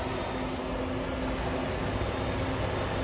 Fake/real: real